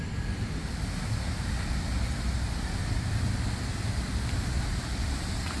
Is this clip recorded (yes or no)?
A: yes